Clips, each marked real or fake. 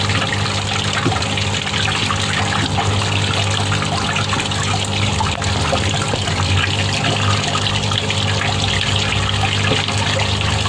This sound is real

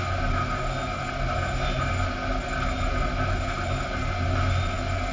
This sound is real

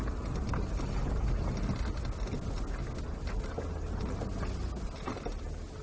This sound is real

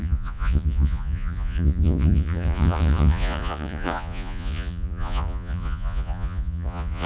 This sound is fake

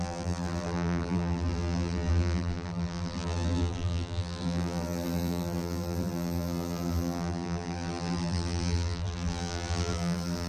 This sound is fake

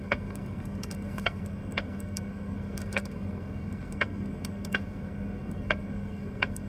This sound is fake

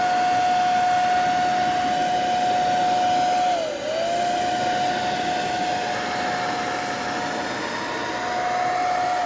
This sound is real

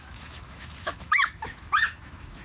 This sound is fake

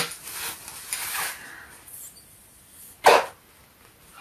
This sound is real